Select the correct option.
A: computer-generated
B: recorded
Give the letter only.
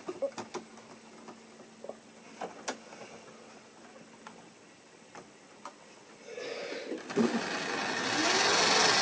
B